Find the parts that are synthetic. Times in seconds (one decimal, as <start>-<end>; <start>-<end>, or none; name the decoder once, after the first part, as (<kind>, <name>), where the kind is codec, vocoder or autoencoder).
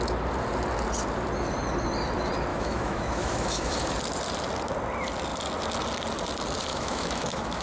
2.5-3.8 (autoencoder, DAC-VAE); 6.7-7.6